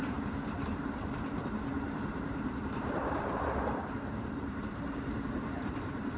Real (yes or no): no